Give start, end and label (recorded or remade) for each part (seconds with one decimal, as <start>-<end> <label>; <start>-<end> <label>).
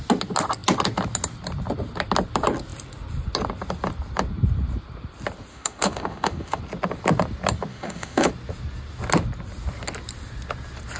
0.0-5.5 recorded; 5.5-6.6 remade; 6.6-7.7 recorded; 7.7-8.3 remade; 8.3-11.0 recorded